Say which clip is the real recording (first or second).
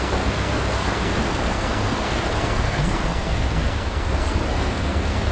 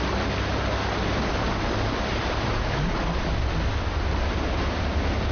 second